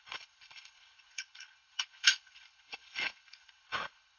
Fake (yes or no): yes